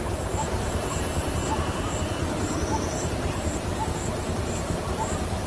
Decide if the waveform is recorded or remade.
remade